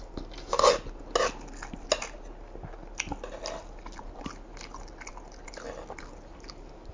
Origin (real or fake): real